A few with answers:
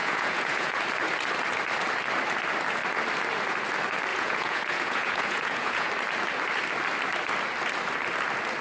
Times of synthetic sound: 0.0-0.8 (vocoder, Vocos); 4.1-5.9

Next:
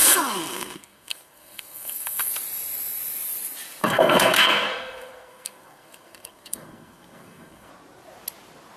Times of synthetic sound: 0.0-2.3 (codec, SNAC); 3.8-7.7

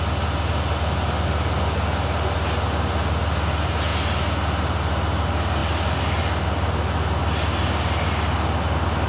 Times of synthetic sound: none

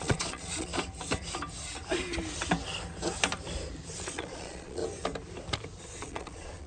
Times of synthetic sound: 0.0-0.7 (vocoder, Vocos); 4.0-4.8; 5.8-6.7

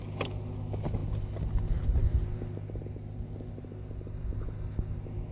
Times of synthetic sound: none

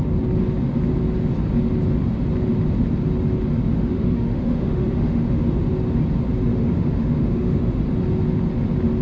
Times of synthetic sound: 3.7-5.7 (autoencoder, DAC-VAE); 6.5-7.8

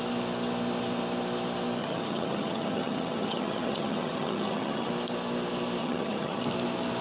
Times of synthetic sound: 1.8-4.9 (vocoder, HiFi-GAN); 5.8-6.4